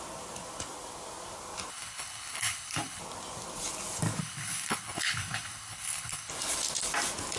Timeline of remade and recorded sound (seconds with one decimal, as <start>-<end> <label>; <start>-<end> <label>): 0.0-1.7 recorded; 1.7-3.0 remade; 3.0-4.2 recorded; 4.2-6.3 remade; 6.3-7.4 recorded